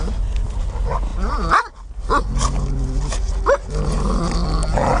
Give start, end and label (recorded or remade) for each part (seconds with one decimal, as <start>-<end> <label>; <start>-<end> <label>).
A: 0.0-5.0 recorded